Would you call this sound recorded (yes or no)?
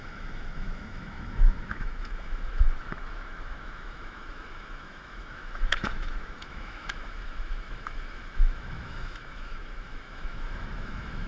no